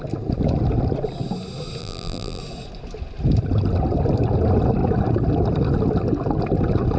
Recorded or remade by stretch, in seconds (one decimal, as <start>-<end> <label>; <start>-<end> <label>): 0.0-1.8 recorded; 1.8-2.4 remade; 2.4-7.0 recorded